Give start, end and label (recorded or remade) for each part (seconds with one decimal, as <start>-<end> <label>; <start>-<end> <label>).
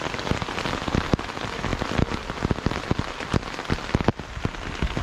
0.0-5.0 recorded